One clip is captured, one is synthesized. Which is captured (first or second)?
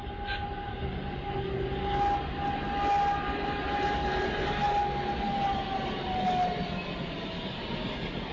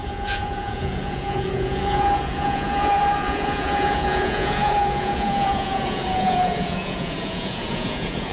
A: first